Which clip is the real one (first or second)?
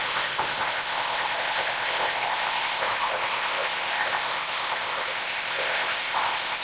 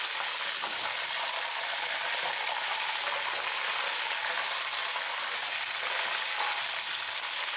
second